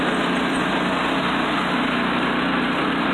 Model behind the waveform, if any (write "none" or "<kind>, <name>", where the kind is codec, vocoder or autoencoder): none